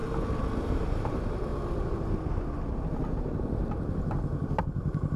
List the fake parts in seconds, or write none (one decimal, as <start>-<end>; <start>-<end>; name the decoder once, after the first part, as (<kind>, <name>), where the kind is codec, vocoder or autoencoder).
0.6-1.5 (vocoder, BigVGAN v2); 4.6-5.2